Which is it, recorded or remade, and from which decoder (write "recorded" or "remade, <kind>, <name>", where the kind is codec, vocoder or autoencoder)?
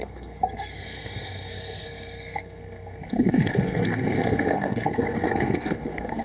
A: remade, codec, SNAC